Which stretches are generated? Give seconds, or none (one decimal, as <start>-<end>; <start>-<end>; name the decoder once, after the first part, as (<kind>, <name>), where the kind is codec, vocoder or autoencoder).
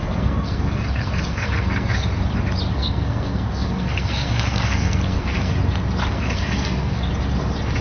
0.0-2.1 (codec, SNAC); 2.7-5.5; 6.1-7.1